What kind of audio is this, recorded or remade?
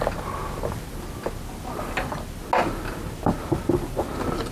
recorded